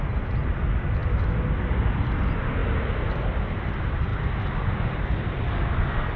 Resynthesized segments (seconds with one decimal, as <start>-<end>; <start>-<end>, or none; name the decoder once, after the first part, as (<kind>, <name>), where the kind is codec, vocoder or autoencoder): 4.1-5.2 (vocoder, BigVGAN v2)